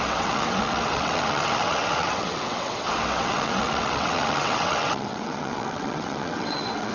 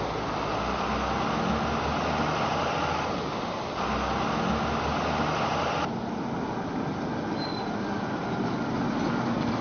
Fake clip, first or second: first